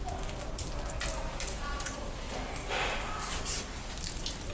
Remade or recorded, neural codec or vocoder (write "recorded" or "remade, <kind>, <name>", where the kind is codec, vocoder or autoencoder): recorded